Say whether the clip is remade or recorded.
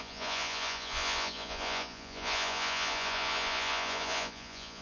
remade